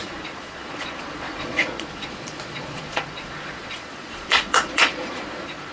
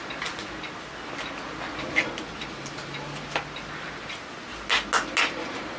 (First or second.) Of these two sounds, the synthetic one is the first